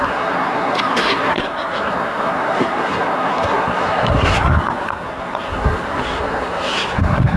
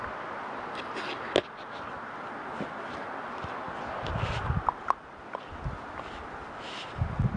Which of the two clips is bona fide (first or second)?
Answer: second